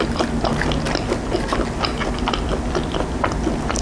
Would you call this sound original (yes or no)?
yes